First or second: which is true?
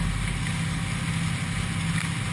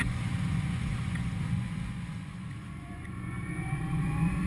first